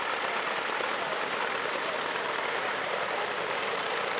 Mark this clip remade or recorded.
remade